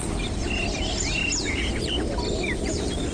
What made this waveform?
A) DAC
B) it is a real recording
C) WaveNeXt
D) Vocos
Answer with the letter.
B